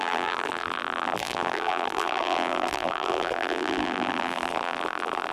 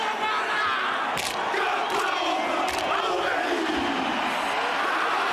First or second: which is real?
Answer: second